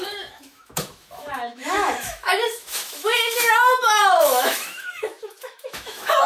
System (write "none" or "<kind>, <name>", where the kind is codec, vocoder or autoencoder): autoencoder, DAC-VAE